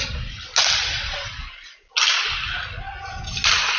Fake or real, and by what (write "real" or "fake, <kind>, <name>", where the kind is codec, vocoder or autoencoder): real